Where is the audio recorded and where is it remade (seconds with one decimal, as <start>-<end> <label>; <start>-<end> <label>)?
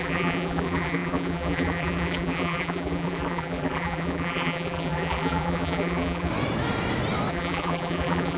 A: 0.0-6.3 remade; 6.3-7.3 recorded; 7.3-8.4 remade